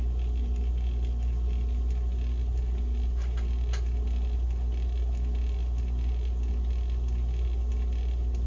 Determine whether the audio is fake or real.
real